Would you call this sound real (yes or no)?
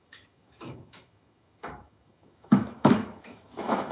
no